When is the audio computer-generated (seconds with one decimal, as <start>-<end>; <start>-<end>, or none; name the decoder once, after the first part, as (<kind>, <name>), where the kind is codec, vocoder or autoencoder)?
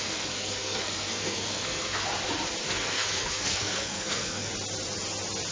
0.0-2.1 (codec, SNAC); 2.7-4.5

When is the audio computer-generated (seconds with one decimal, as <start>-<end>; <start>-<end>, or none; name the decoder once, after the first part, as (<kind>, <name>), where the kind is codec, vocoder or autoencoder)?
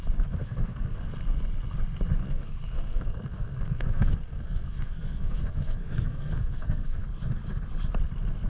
0.4-1.1 (codec, SNAC); 2.2-7.0